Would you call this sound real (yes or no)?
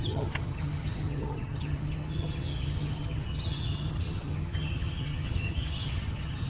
no